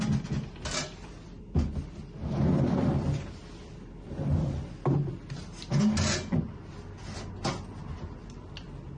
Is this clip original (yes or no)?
yes